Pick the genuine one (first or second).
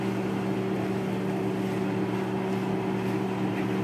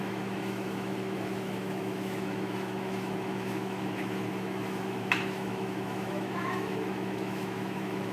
first